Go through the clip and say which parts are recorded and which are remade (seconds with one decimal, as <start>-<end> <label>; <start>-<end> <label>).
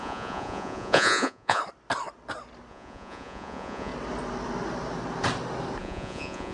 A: 0.0-1.6 remade; 1.6-2.7 recorded; 2.7-3.9 remade; 3.9-5.8 recorded; 5.8-6.5 remade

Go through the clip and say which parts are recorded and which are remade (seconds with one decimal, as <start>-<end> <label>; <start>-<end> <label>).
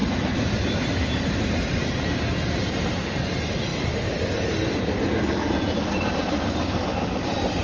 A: 0.0-3.7 remade; 3.7-5.8 recorded; 5.8-7.6 remade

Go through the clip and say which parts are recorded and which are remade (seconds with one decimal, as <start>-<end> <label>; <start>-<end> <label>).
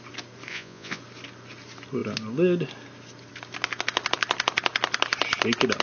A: 0.0-0.5 recorded; 0.5-1.0 remade; 1.0-5.8 recorded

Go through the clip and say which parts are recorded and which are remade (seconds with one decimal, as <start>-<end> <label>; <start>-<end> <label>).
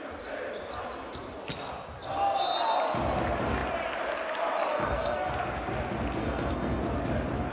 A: 0.0-4.7 recorded; 4.7-5.3 remade; 5.3-6.2 recorded; 6.2-6.8 remade; 6.8-7.5 recorded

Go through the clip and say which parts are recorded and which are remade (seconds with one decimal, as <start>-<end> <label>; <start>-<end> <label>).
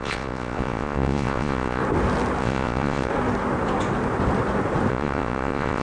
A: 0.0-1.8 remade; 1.8-2.4 recorded; 2.4-3.1 remade; 3.1-4.9 recorded; 4.9-5.8 remade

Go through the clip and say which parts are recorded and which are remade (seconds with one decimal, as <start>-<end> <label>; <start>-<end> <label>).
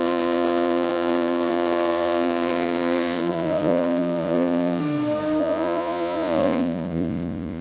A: 0.0-4.8 remade; 4.8-5.4 recorded; 5.4-7.6 remade